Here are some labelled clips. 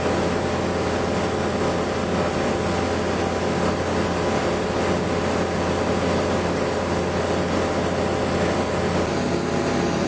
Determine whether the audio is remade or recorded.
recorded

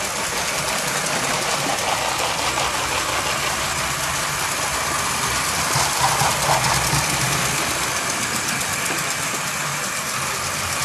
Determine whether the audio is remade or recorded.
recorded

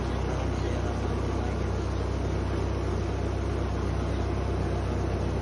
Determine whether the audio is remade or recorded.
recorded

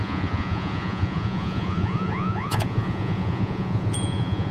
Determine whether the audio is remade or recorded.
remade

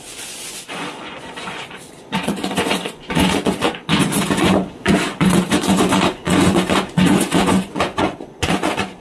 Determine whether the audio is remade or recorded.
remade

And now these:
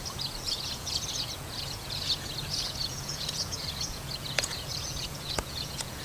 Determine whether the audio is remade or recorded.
remade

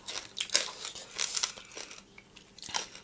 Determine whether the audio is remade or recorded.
recorded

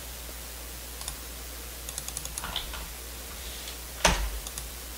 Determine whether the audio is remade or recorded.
recorded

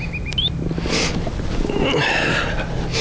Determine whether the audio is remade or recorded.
recorded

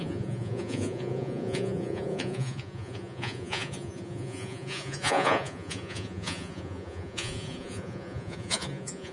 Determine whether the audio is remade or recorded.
remade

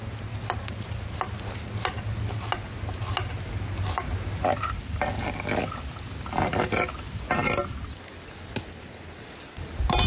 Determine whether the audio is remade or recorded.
recorded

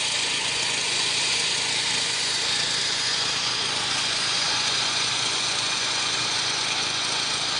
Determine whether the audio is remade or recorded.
remade